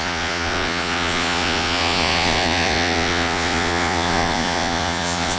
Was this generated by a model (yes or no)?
yes